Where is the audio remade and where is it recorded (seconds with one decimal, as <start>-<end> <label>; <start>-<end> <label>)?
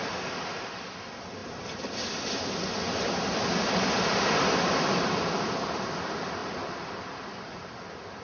0.0-8.2 remade